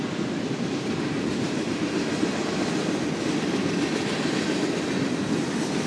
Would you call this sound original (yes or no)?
yes